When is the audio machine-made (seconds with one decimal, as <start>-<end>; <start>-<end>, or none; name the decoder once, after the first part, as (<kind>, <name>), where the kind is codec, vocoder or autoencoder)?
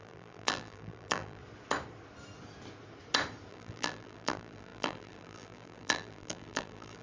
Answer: 0.0-1.4 (vocoder, BigVGAN v2); 3.5-7.0